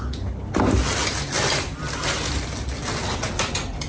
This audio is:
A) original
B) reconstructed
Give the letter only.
A